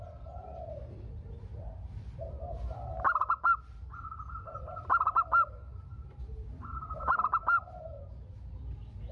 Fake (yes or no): yes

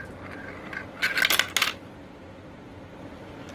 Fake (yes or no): yes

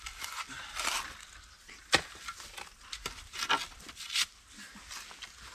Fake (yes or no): no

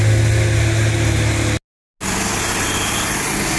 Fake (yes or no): no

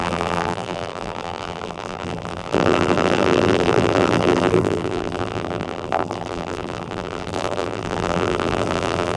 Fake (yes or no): yes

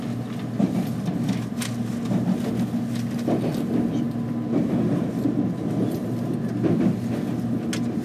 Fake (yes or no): no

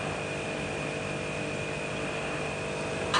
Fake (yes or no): yes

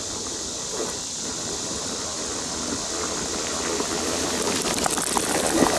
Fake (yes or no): yes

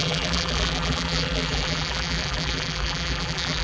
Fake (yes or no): yes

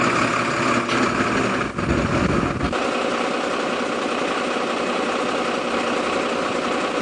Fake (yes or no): no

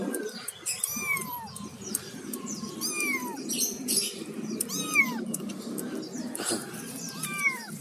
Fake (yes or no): yes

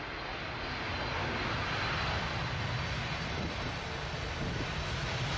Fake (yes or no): no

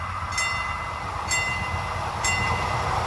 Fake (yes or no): no